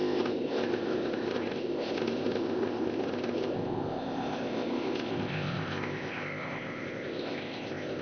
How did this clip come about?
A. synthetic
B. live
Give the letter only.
A